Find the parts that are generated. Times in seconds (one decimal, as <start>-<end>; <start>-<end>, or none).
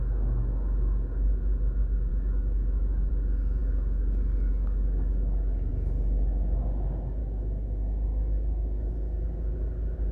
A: 2.1-3.1; 3.6-5.7; 7.2-9.2